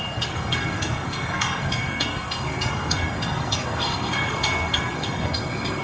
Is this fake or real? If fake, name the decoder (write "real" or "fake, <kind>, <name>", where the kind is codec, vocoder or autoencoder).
fake, codec, SNAC